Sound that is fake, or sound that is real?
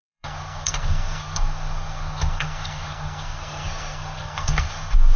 fake